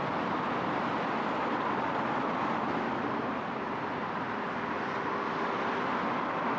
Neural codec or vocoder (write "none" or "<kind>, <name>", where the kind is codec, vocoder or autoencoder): vocoder, BigVGAN v2